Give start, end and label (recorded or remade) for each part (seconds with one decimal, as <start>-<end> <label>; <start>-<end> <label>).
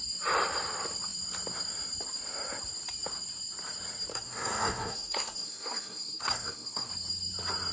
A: 0.0-4.1 recorded; 4.1-6.9 remade; 6.9-7.7 recorded